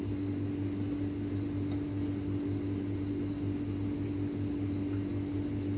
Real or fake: real